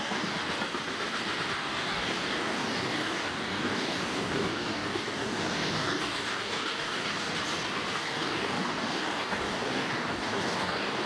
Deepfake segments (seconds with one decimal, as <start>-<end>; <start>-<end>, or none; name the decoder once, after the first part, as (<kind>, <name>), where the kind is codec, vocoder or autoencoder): 0.0-0.4 (codec, DAC); 1.5-7.3; 7.9-11.1